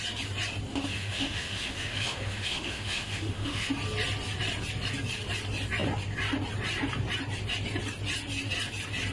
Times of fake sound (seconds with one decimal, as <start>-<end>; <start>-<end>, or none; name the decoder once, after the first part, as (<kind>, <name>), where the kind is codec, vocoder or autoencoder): 0.7-3.7 (autoencoder, DAC-VAE)